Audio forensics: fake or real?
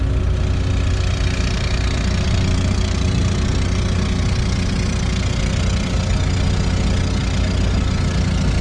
real